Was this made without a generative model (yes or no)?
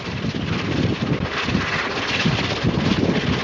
yes